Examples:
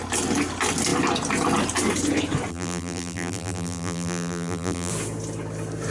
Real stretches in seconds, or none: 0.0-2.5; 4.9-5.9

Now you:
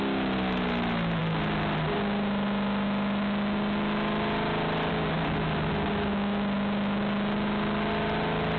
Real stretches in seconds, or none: 0.0-8.6

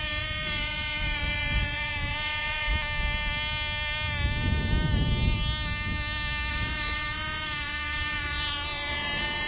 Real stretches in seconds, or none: 2.7-6.5